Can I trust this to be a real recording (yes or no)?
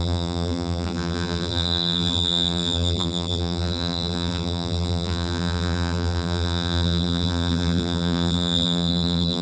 no